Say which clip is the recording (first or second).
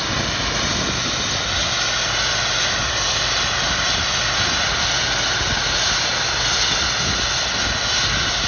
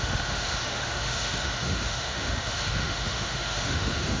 first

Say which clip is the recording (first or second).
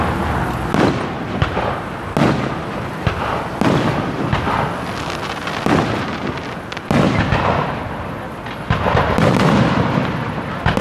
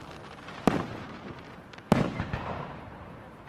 first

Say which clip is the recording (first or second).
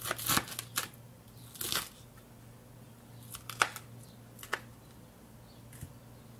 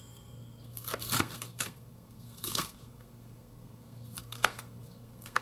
first